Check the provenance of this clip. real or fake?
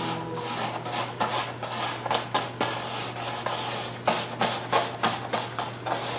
real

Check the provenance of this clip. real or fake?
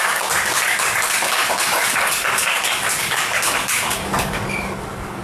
fake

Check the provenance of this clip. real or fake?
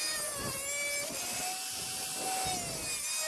real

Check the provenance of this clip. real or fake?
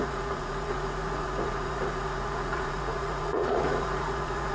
fake